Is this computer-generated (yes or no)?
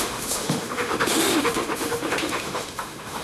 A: yes